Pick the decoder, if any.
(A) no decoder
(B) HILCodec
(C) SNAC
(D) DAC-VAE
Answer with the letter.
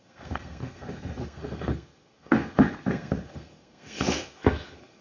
C